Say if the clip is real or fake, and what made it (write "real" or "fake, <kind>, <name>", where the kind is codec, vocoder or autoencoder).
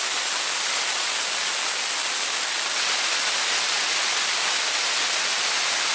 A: real